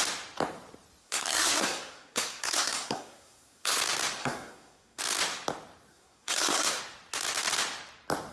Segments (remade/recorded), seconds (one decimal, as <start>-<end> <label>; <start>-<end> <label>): 0.0-1.0 recorded; 1.0-3.8 remade; 3.8-4.2 recorded; 4.2-5.0 remade; 5.0-5.9 recorded; 5.9-6.8 remade; 6.8-8.3 recorded